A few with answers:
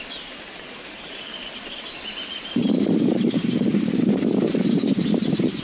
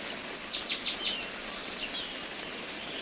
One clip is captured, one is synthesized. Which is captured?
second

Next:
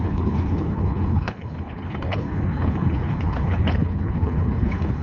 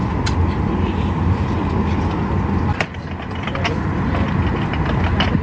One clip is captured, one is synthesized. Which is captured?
second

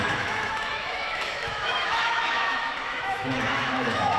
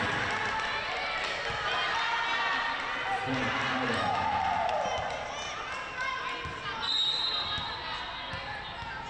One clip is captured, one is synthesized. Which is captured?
second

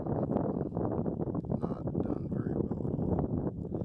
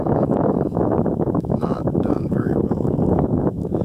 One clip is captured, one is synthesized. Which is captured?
first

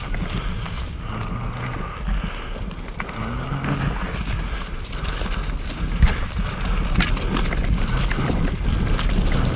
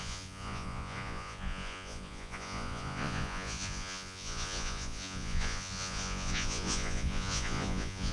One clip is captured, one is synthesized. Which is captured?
first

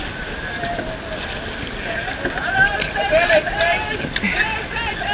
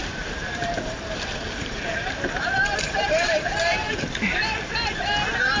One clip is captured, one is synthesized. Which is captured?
first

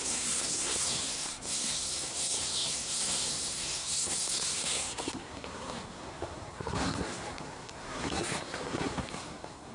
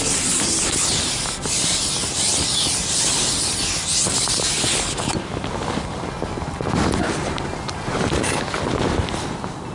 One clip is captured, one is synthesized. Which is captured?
second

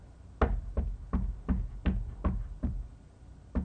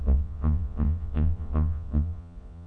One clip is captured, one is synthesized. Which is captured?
first